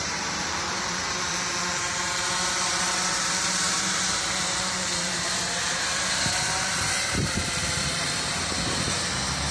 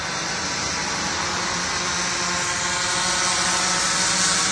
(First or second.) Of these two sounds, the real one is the second